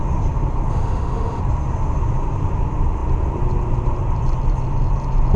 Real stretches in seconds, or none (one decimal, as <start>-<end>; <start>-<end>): 0.0-0.7; 1.4-5.4